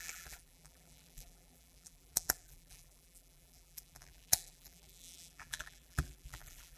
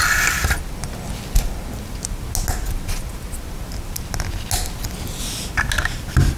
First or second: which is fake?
first